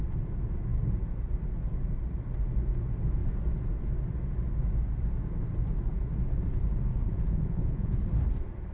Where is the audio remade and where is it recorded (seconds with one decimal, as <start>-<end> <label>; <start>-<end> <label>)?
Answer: 0.0-7.1 recorded; 7.1-8.0 remade; 8.0-8.7 recorded